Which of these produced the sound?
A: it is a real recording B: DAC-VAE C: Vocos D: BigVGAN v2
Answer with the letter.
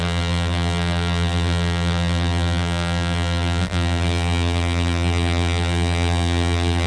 D